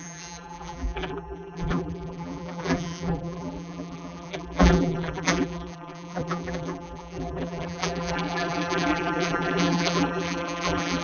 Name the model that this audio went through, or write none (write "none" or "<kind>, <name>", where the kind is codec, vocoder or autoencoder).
vocoder, BigVGAN v2